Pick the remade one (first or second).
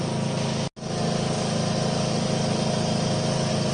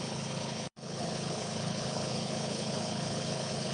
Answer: second